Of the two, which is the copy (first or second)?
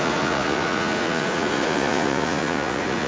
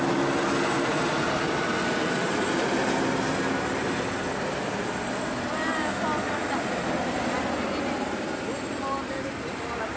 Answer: first